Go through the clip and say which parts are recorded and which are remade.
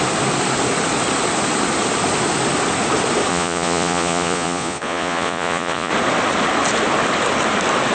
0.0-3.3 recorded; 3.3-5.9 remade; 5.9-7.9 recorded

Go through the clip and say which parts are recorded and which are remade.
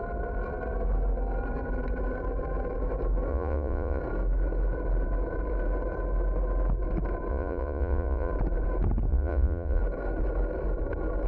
0.0-3.3 recorded; 3.3-4.0 remade; 4.0-7.3 recorded; 7.3-8.3 remade; 8.3-9.1 recorded; 9.1-9.8 remade; 9.8-11.3 recorded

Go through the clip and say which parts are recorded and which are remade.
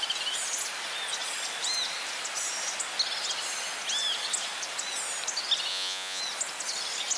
0.0-5.7 recorded; 5.7-6.2 remade; 6.2-7.2 recorded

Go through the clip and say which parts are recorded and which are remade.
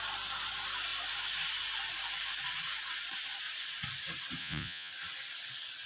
0.0-4.4 recorded; 4.4-4.9 remade; 4.9-5.9 recorded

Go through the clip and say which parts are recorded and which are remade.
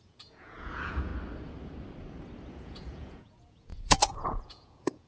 0.0-1.1 remade; 1.1-2.5 recorded; 2.5-5.1 remade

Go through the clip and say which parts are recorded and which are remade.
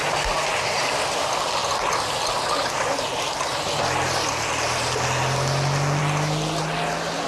0.0-7.3 recorded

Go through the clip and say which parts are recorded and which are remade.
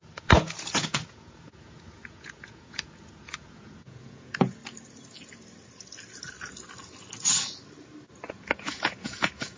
0.0-4.6 remade; 4.6-8.3 recorded; 8.3-9.6 remade